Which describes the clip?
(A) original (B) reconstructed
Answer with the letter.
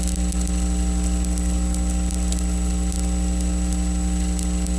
A